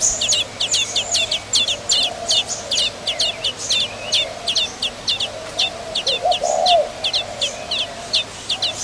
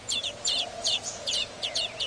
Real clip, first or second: first